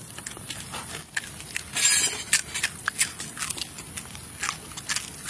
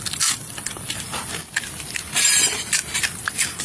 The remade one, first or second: second